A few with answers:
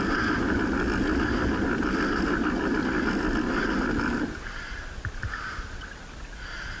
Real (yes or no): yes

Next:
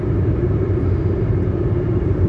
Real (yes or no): no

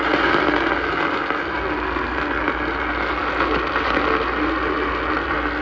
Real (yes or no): yes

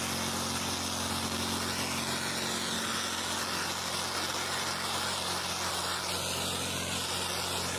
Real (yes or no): yes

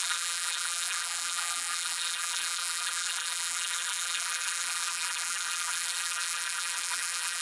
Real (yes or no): no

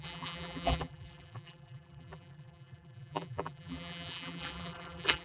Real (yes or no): no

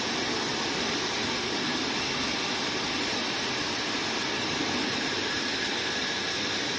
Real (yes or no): no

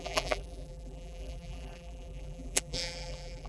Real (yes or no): no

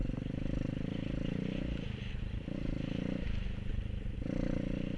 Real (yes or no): yes